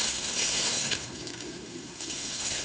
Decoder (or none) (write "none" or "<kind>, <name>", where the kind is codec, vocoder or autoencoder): codec, SNAC